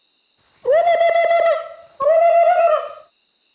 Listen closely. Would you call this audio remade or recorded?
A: recorded